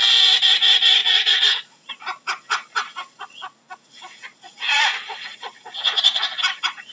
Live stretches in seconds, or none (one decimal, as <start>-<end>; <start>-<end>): 0.0-1.0; 1.9-3.0; 6.0-6.9